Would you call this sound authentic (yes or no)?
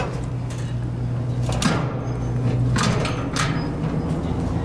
yes